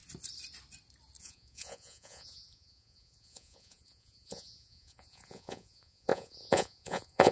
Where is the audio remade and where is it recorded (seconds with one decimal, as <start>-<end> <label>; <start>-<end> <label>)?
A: 0.0-1.2 recorded; 1.2-7.3 remade